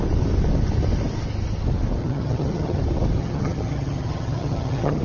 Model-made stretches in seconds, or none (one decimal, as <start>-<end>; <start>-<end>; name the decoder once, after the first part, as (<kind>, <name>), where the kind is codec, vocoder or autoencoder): 2.0-2.8 (vocoder, HiFi-GAN); 3.2-5.0